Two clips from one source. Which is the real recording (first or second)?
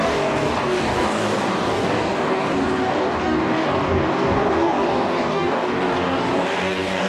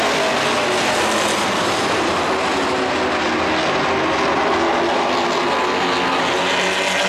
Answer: second